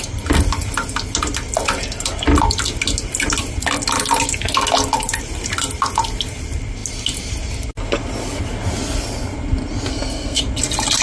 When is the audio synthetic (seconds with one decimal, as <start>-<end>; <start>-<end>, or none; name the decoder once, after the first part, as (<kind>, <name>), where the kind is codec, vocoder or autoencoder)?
9.9-10.4 (codec, SNAC)